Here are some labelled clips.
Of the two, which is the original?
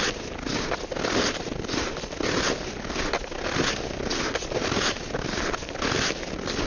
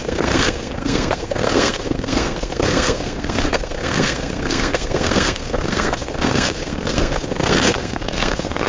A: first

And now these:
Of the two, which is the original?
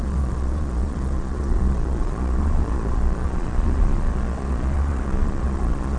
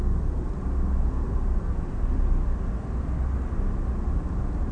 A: second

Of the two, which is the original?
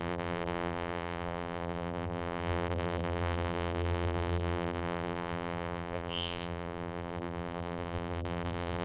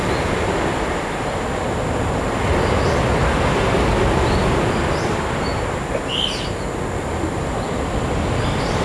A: second